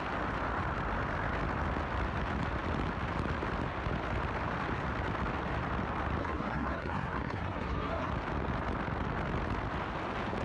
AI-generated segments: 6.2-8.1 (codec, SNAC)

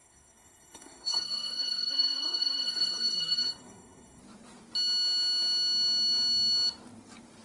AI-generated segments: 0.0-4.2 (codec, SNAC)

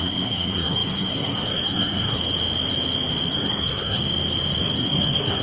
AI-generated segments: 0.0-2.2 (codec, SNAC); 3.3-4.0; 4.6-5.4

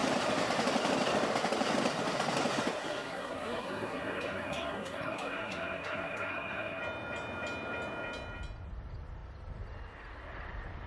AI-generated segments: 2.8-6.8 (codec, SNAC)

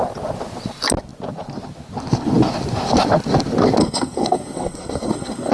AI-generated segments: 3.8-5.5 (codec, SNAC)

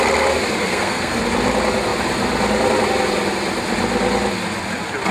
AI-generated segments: 0.6-1.2 (codec, SNAC)

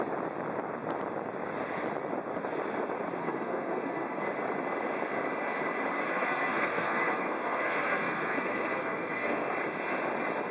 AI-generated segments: 3.2-4.2 (codec, SNAC); 6.1-9.5